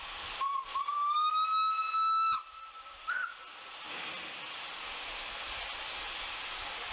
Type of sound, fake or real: real